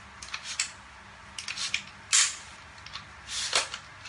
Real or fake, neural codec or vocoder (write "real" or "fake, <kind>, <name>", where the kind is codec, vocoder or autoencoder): real